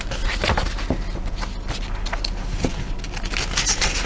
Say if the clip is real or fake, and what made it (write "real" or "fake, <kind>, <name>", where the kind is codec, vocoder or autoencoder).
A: real